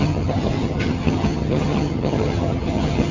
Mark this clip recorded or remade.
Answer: remade